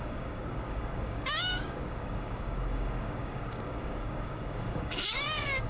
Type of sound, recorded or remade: remade